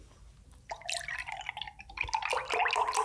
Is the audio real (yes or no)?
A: yes